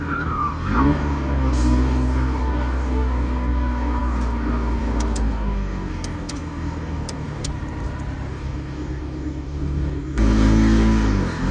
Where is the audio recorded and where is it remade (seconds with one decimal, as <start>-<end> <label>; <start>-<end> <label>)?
0.0-7.5 remade; 7.5-8.3 recorded; 8.3-11.5 remade